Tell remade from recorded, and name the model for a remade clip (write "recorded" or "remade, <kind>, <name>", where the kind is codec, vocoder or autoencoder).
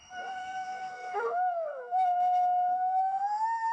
remade, autoencoder, DAC-VAE